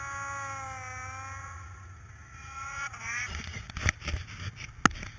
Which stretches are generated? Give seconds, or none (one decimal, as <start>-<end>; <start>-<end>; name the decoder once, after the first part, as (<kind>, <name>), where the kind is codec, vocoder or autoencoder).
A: 1.4-3.7 (vocoder, Vocos)